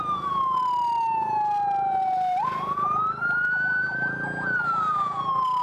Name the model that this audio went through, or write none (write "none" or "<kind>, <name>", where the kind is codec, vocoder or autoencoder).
none